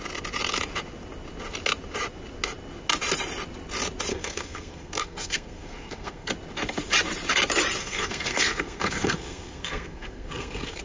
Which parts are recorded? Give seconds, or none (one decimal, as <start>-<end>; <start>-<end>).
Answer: 0.0-4.1; 6.3-7.8